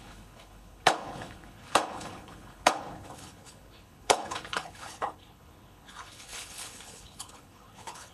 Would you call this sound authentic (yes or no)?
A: no